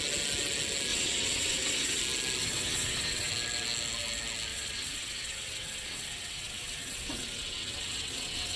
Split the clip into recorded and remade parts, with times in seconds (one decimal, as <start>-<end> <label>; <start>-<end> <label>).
0.0-0.9 recorded; 0.9-2.0 remade; 2.0-2.4 recorded; 2.4-3.3 remade; 3.3-4.5 recorded; 4.5-8.6 remade